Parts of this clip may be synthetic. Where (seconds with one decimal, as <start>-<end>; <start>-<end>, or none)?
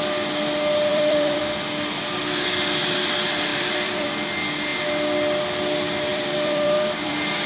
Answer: 0.9-1.4; 3.5-4.1; 6.1-7.1